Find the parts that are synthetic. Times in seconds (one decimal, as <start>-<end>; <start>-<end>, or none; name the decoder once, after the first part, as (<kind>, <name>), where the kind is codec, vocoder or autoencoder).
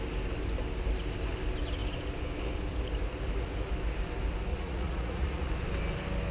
4.5-5.5 (vocoder, Vocos)